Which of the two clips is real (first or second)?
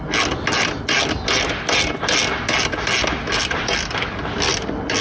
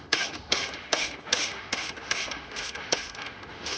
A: first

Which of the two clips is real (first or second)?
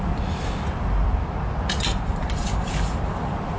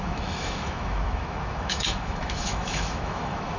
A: first